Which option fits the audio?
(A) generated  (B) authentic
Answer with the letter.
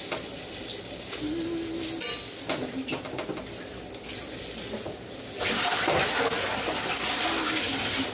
B